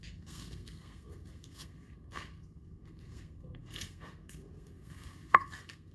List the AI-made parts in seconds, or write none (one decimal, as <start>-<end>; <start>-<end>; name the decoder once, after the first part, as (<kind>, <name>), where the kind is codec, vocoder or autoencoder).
0.0-5.9 (codec, SNAC)